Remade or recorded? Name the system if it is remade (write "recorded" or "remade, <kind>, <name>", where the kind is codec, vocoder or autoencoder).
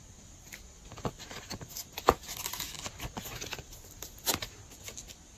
recorded